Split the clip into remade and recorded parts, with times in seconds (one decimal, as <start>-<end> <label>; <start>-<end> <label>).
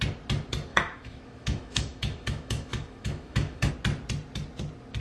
0.0-0.7 recorded; 0.7-3.7 remade; 3.7-5.0 recorded